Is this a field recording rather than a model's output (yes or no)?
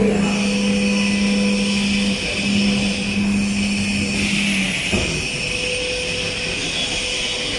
yes